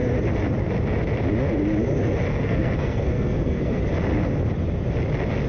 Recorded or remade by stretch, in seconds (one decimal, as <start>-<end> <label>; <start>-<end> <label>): 0.0-2.3 recorded; 2.3-3.8 remade; 3.8-5.5 recorded